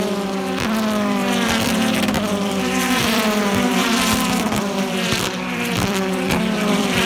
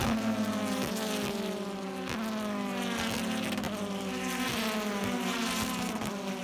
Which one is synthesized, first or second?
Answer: first